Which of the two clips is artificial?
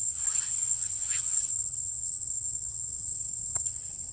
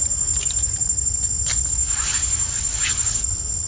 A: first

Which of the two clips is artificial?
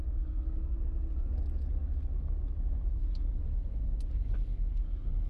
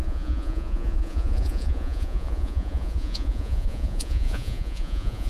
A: second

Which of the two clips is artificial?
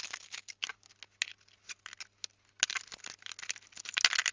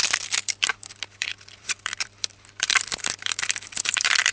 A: second